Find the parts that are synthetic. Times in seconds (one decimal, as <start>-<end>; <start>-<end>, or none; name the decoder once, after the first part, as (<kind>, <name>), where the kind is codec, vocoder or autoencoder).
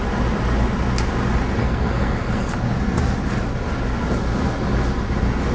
1.6-2.5 (codec, SNAC)